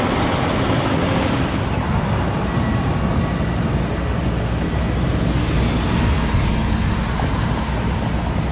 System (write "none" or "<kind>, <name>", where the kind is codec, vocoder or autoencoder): none